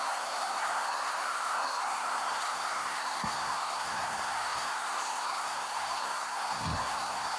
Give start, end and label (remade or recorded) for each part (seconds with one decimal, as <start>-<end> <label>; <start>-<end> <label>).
0.0-7.4 remade